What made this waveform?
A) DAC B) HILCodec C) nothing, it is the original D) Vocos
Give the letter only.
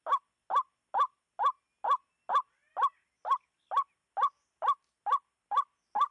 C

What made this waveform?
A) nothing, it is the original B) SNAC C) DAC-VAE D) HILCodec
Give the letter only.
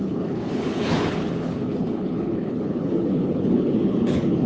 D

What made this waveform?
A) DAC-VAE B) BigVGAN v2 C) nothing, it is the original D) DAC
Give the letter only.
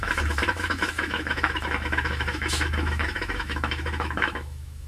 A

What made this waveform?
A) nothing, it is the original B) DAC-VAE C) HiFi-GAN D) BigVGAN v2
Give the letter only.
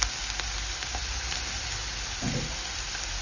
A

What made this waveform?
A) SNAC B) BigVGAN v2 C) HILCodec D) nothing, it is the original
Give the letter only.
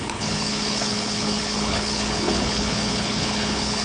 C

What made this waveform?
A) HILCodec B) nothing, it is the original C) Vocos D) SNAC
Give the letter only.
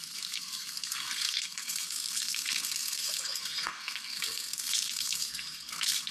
D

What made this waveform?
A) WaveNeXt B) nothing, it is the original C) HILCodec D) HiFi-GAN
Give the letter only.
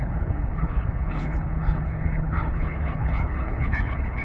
C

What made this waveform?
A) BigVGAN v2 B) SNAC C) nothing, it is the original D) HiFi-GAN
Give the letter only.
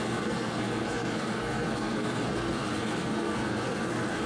B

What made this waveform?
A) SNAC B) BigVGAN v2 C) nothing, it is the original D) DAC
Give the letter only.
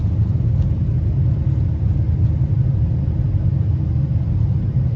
C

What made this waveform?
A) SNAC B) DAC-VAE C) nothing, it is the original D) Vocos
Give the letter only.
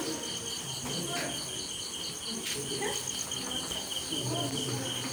C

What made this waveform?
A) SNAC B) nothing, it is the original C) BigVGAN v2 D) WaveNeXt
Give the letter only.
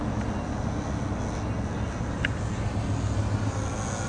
B